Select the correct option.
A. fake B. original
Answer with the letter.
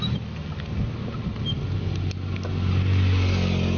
B